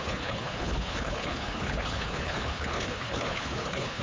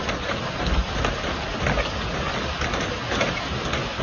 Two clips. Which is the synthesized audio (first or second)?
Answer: first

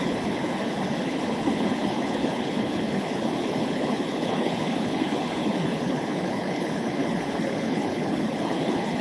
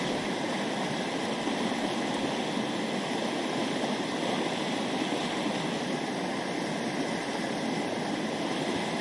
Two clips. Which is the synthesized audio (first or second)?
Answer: first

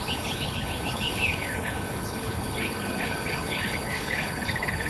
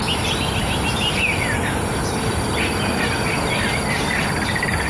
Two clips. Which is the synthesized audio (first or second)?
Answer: first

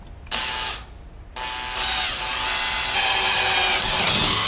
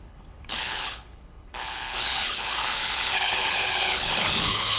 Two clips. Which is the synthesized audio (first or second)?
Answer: second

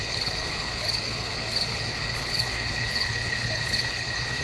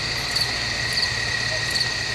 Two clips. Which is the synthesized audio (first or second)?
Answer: first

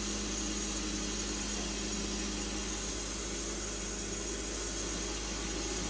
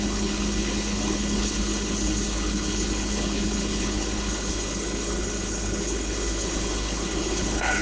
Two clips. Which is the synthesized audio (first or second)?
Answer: second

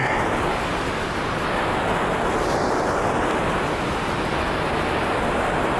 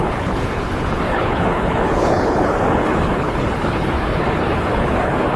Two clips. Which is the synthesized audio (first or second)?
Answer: second